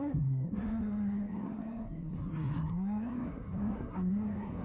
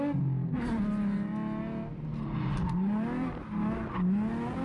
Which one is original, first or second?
second